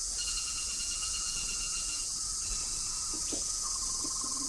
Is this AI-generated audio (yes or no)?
yes